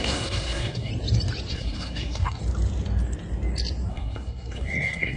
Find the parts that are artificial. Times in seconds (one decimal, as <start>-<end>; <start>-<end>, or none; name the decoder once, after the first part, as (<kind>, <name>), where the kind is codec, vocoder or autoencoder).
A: 0.0-0.9 (codec, SNAC); 1.5-2.4; 3.9-5.2

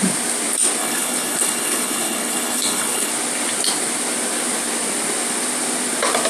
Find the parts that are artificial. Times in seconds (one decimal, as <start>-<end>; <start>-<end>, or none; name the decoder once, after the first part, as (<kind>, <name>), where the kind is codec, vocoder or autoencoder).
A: 0.8-3.1 (codec, HILCodec)

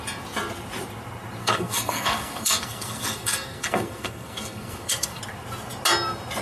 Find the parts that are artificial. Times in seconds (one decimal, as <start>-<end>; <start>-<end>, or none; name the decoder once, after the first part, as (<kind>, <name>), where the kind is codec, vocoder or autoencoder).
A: 1.4-5.2 (codec, SNAC)

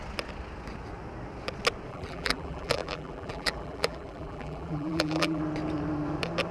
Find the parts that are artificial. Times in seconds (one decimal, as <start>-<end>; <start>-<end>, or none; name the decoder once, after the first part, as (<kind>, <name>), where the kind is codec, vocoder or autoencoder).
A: 1.9-5.4 (vocoder, BigVGAN v2)

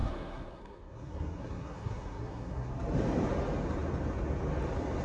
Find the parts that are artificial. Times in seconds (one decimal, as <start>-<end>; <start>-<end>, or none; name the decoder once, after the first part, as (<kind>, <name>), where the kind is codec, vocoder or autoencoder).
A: 0.0-2.7 (codec, SNAC)